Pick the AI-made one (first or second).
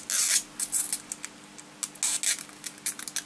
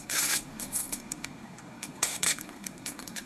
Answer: second